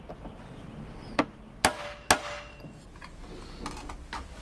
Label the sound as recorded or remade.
recorded